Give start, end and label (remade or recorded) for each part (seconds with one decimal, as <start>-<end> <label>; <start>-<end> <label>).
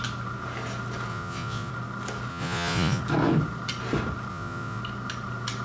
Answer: 0.0-1.1 recorded; 1.1-1.7 remade; 1.7-2.3 recorded; 2.3-3.0 remade; 3.0-4.3 recorded; 4.3-4.8 remade; 4.8-5.6 recorded